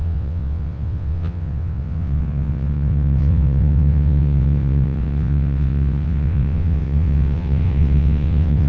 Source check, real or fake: fake